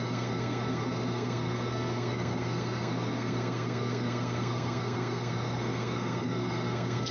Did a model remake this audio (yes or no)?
yes